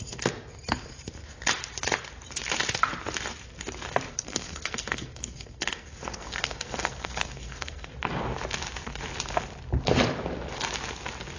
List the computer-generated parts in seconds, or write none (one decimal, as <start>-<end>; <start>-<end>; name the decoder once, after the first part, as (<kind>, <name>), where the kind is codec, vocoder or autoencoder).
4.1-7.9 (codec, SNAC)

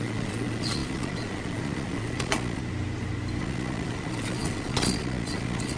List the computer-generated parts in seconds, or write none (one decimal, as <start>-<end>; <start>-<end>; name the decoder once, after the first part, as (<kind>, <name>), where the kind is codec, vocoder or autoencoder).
0.0-2.6 (vocoder, Vocos); 3.4-5.8

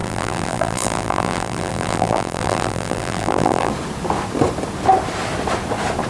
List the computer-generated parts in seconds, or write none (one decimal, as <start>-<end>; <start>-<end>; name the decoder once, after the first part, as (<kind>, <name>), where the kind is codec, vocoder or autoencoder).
0.0-3.7 (vocoder, BigVGAN v2)

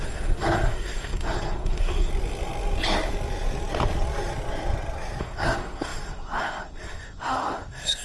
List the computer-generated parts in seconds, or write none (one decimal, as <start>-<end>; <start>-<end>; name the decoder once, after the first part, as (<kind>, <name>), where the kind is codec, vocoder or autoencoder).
0.0-2.1 (codec, SNAC); 5.2-8.0